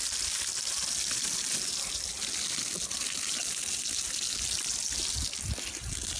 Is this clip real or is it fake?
real